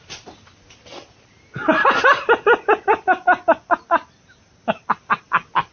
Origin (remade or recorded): recorded